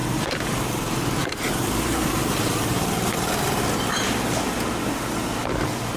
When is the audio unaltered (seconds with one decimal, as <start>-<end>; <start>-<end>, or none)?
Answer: 3.6-6.0